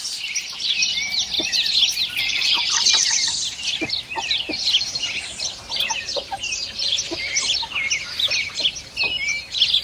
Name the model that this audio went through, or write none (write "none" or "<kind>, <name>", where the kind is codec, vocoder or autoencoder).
none